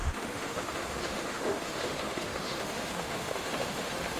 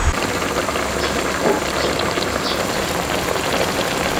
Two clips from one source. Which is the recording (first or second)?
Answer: second